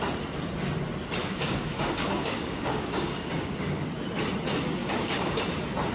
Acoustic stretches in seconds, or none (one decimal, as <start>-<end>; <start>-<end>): 0.0-1.2; 3.9-4.8; 5.4-5.9

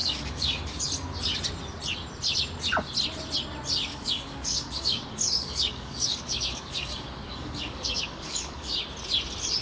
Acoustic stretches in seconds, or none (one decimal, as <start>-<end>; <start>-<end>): 0.8-3.9; 8.8-9.6

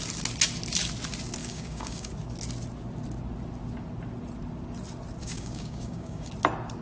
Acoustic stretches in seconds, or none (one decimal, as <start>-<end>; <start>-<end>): 0.0-1.4; 2.1-5.2; 6.3-6.8